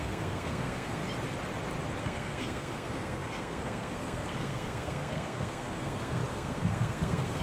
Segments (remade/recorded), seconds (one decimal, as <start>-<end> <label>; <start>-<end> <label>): 0.0-1.0 remade; 1.0-2.0 recorded; 2.0-7.4 remade